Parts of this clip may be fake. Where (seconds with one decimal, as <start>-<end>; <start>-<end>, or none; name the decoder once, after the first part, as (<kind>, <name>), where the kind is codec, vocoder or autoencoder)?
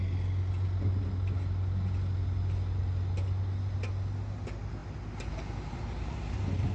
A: none